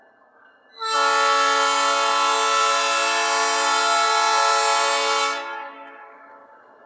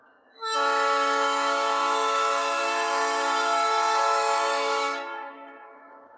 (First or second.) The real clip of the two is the first